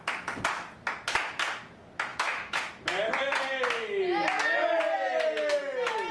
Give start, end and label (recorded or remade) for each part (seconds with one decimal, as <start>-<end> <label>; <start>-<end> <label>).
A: 0.0-2.1 recorded; 2.1-2.6 remade; 2.6-6.1 recorded